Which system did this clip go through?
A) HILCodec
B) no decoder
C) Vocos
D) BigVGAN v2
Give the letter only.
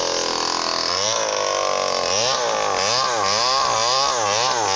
B